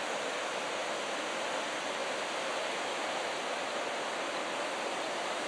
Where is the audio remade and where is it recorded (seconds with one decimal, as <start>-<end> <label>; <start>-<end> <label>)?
0.0-5.5 recorded

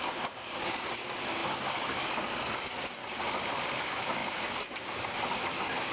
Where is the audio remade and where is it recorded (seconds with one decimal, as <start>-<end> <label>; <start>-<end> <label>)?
0.0-3.0 remade; 3.0-3.8 recorded; 3.8-5.9 remade

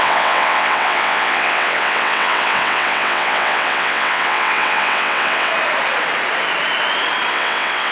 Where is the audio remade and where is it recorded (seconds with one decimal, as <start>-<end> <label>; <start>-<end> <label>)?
0.0-5.5 remade; 5.5-7.3 recorded; 7.3-7.9 remade

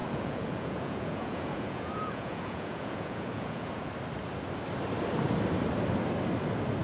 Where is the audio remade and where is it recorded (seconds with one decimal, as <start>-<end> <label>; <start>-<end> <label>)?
0.0-3.9 remade; 3.9-6.8 recorded

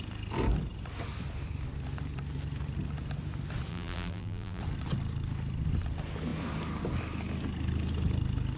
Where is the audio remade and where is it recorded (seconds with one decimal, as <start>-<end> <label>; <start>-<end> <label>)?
0.0-3.7 recorded; 3.7-4.6 remade; 4.6-8.6 recorded

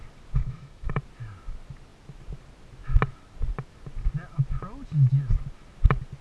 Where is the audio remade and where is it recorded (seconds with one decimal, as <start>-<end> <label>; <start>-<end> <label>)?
0.0-0.4 recorded; 0.4-1.0 remade; 1.0-6.2 recorded

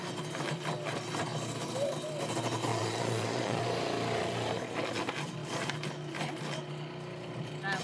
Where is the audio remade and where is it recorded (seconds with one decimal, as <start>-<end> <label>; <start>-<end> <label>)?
0.0-2.7 recorded; 2.7-3.6 remade; 3.6-7.8 recorded

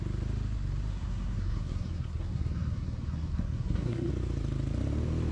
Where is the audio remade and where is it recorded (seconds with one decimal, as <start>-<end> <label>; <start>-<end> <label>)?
0.0-0.9 recorded; 0.9-4.1 remade; 4.1-5.3 recorded